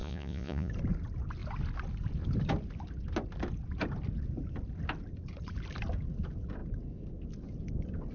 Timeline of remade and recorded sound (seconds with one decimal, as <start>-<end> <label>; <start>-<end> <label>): 0.0-0.7 remade; 0.7-8.1 recorded